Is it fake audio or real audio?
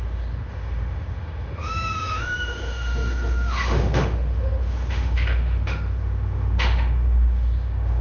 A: fake